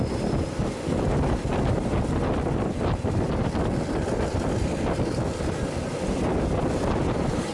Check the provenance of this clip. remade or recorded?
recorded